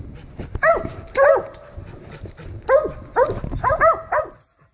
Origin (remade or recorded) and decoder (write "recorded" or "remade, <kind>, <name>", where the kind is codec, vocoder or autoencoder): recorded